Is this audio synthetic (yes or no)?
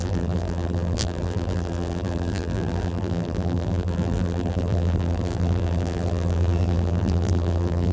yes